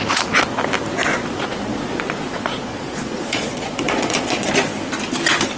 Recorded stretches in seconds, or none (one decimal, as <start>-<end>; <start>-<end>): 0.0-1.1; 4.5-5.6